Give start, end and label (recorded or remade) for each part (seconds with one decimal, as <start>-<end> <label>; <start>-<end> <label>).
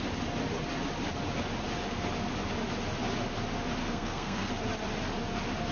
0.0-3.8 recorded; 3.8-4.5 remade; 4.5-5.7 recorded